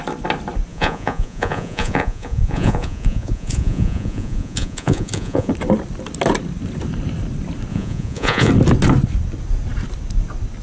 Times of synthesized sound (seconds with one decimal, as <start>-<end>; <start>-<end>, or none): 0.7-5.5; 7.7-8.5